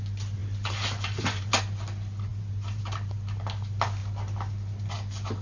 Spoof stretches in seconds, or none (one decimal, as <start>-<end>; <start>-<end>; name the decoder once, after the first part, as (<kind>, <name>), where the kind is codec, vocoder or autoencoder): 0.4-1.5 (vocoder, BigVGAN v2); 2.3-2.8